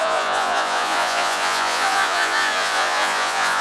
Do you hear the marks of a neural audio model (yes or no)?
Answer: yes